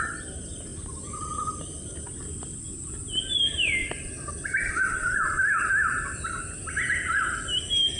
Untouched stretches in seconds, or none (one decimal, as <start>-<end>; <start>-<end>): 0.0-0.7; 2.6-3.8; 5.7-8.0